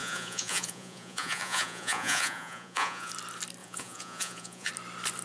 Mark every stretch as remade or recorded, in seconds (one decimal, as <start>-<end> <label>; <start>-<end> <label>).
0.0-3.1 remade; 3.1-3.6 recorded; 3.6-4.7 remade; 4.7-5.2 recorded